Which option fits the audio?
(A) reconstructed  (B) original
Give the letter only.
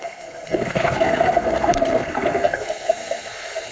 A